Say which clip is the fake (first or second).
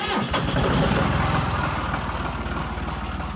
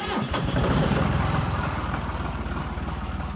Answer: second